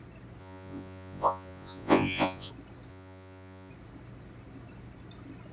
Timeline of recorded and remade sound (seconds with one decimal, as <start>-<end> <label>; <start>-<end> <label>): 0.0-0.4 recorded; 0.4-2.5 remade; 2.5-2.9 recorded; 2.9-3.7 remade; 3.7-5.5 recorded